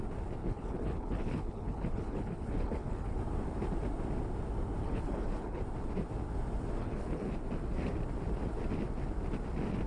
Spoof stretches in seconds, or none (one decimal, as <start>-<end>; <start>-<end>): 0.4-3.2; 4.8-5.6; 6.8-7.3

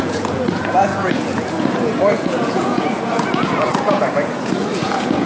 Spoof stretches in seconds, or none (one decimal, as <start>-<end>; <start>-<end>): 0.0-5.3